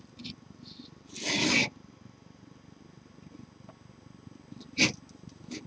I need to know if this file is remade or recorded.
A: recorded